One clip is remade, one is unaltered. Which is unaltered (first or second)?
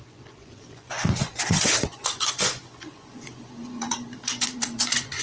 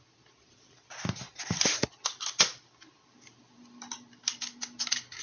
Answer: second